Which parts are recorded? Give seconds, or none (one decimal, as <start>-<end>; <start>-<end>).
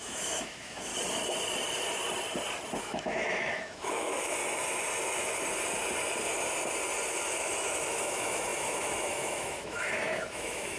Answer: 0.9-2.8; 4.4-7.4